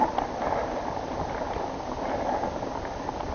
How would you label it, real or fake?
real